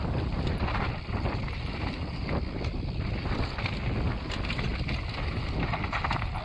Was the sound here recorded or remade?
recorded